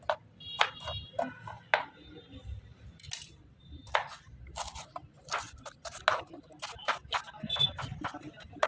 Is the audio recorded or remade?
recorded